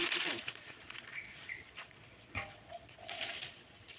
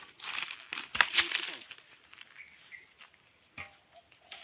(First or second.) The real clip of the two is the second